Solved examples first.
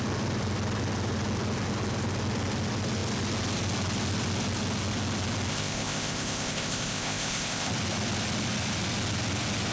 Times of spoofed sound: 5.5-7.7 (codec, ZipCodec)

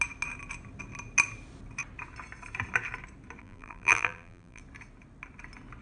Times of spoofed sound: 3.4-4.6 (vocoder, BigVGAN v2)

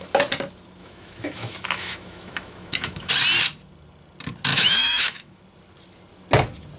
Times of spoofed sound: 0.8-3.1 (autoencoder, DAC-VAE); 4.5-5.4